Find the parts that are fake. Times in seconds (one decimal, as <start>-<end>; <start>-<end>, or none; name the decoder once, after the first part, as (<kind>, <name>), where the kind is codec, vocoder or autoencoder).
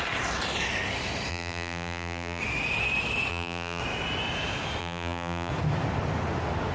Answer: 1.3-2.4 (vocoder, BigVGAN v2); 3.3-3.8; 4.8-5.5